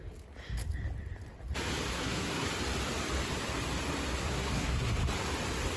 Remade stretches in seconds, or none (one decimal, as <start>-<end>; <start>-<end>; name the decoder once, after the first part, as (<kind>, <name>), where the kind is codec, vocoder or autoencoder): 1.9-2.5 (codec, SNAC); 4.2-4.9